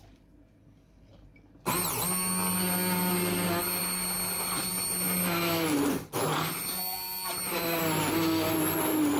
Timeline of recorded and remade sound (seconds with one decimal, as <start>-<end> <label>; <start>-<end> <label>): 0.0-9.2 recorded